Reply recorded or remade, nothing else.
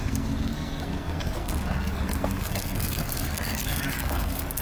remade